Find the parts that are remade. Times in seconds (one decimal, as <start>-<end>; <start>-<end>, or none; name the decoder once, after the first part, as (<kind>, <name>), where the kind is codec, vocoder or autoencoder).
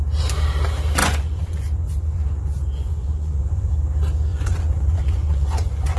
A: 1.0-3.7 (vocoder, Vocos); 4.3-6.0